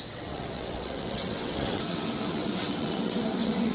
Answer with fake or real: fake